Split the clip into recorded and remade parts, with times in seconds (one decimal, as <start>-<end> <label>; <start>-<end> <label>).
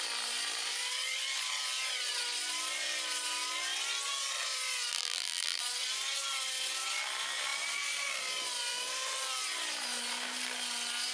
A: 0.0-4.9 recorded; 4.9-5.6 remade; 5.6-11.1 recorded